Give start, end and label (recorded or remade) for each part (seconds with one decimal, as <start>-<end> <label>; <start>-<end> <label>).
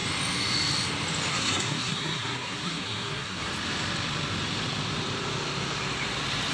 0.0-1.3 recorded; 1.3-3.5 remade; 3.5-6.5 recorded